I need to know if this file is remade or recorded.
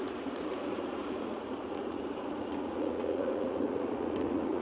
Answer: remade